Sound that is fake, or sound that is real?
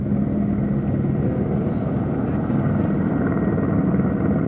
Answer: real